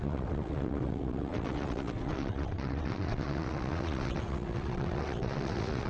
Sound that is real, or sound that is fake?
fake